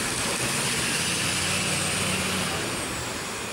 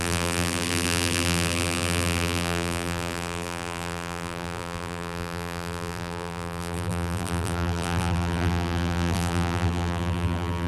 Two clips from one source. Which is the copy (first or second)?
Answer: second